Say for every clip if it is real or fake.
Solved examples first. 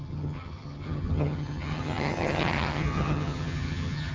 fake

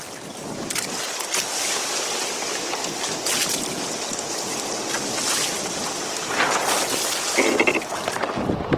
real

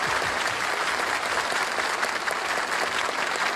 real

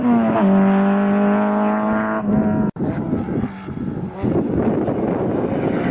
real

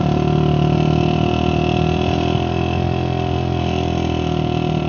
real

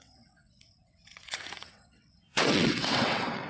fake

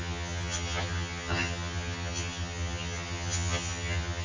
fake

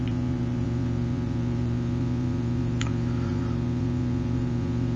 fake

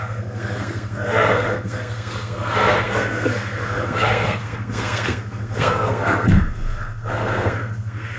fake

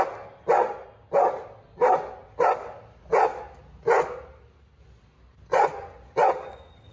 real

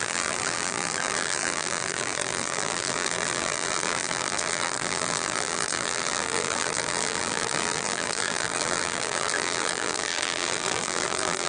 fake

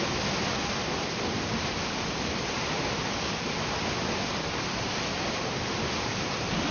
real